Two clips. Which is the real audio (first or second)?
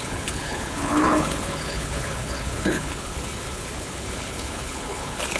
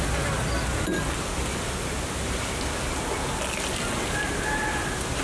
second